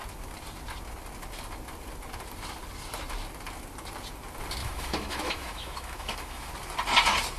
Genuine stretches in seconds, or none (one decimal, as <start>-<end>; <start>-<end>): 0.0-4.6; 6.5-7.4